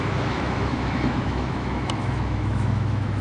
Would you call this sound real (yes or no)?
no